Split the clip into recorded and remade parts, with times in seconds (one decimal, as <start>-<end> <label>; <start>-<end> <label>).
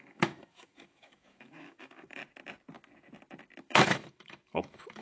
0.0-2.2 remade; 2.2-3.6 recorded; 3.6-5.0 remade